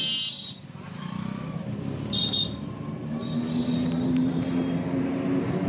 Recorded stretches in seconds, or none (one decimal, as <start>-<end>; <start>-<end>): 0.0-5.7